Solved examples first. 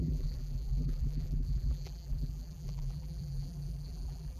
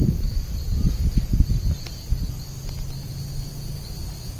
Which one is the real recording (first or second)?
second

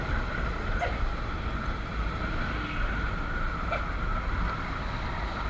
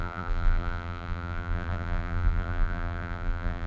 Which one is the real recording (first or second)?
first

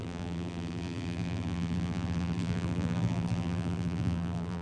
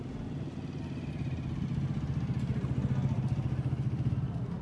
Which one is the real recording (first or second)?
second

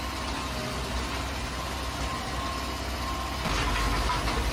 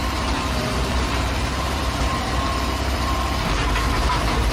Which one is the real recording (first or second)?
first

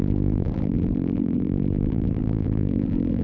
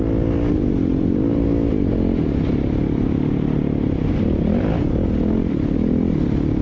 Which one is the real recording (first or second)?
second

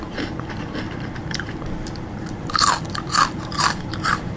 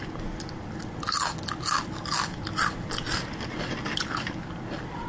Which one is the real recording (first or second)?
second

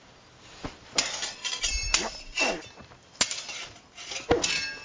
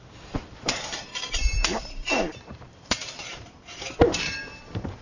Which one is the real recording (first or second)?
first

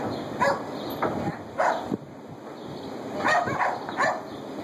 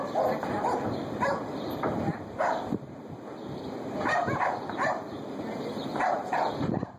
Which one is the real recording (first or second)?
first